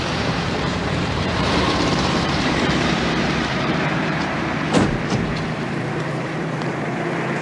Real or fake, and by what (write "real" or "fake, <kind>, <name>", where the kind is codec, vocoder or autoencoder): fake, vocoder, BigVGAN v2